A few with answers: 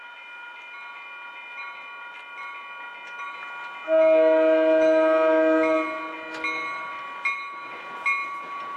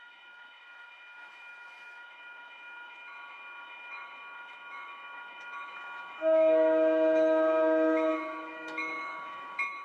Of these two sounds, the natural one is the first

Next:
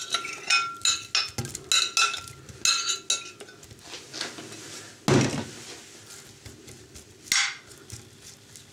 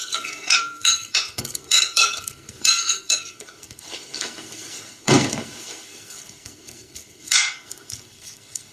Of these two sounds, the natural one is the first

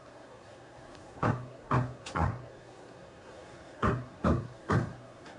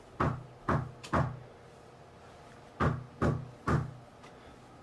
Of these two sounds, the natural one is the second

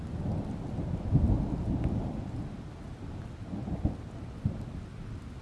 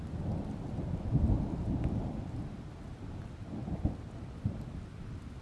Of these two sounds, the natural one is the first